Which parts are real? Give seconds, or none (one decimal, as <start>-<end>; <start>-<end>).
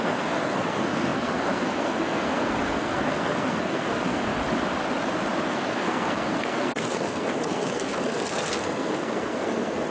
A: 4.3-5.5